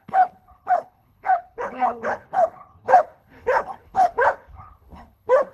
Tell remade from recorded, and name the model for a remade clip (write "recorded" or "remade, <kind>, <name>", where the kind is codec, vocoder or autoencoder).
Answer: remade, codec, HILCodec